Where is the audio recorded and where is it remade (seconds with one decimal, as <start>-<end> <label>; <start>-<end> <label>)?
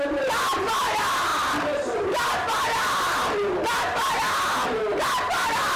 0.0-5.8 recorded